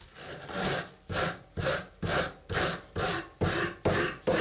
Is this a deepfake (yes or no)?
no